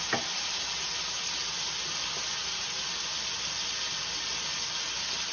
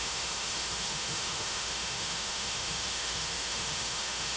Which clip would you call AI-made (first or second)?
second